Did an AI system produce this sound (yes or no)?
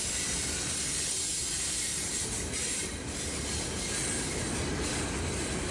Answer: no